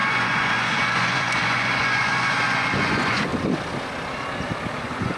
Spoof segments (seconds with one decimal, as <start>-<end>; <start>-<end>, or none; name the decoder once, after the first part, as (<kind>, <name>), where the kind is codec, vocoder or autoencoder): 0.0-3.3 (vocoder, Vocos); 4.8-5.2

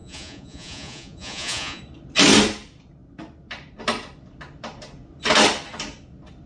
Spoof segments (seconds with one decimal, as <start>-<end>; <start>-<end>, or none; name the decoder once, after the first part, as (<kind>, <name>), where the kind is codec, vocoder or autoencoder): 0.0-1.8 (vocoder, Vocos)

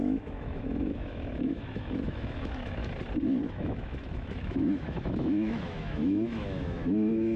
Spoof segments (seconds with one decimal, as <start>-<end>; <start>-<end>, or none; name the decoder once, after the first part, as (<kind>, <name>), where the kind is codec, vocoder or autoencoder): 0.0-2.8 (autoencoder, DAC-VAE); 3.5-7.4